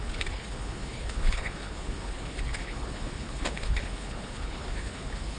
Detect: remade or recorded remade